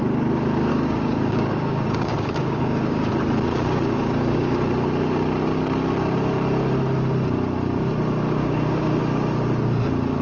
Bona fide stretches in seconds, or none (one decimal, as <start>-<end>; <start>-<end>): 0.0-0.7; 3.1-3.5; 4.6-8.4; 9.0-10.2